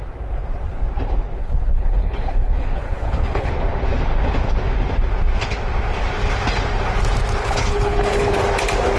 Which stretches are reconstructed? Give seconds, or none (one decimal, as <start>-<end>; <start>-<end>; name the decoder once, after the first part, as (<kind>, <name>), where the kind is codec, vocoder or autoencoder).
1.4-3.5 (codec, HILCodec); 7.4-8.4